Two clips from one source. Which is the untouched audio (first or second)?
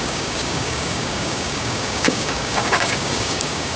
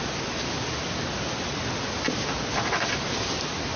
second